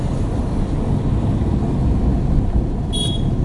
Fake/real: real